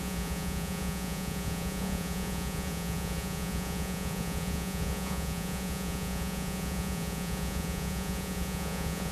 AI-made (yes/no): yes